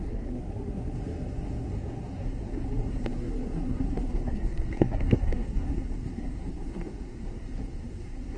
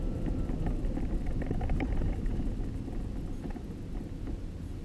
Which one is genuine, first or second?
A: second